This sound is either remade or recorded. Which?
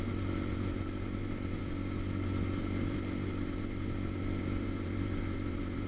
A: remade